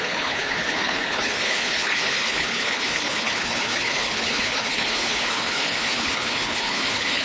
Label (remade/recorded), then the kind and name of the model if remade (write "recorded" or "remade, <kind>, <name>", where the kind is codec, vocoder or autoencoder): remade, codec, HILCodec